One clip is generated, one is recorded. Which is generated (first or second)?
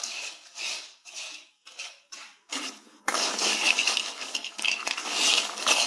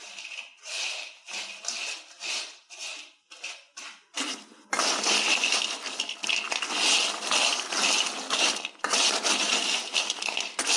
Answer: first